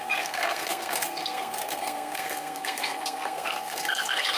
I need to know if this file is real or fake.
fake